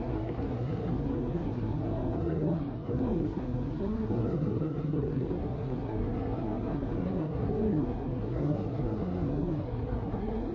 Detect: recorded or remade remade